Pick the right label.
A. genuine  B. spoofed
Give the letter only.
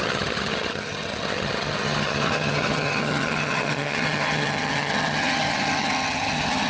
B